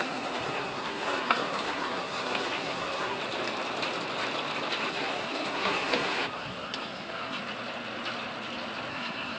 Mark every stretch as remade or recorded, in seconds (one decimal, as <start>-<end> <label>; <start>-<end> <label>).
0.0-3.2 remade; 3.2-4.9 recorded; 4.9-7.4 remade; 7.4-8.9 recorded; 8.9-9.4 remade